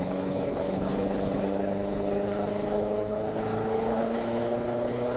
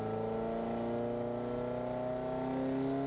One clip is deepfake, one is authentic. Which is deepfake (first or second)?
first